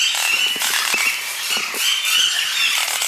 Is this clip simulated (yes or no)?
no